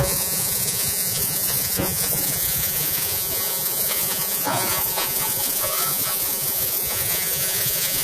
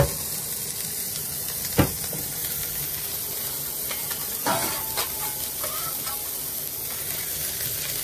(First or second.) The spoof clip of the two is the first